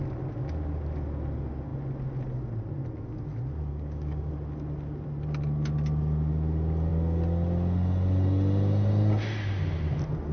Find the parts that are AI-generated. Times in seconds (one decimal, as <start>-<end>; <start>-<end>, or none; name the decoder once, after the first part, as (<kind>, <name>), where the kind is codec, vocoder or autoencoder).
3.7-4.3 (codec, DAC)